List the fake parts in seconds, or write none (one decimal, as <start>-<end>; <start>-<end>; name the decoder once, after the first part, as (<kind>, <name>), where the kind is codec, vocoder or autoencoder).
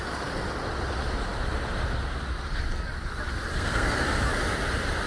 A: 3.5-4.0 (codec, SNAC)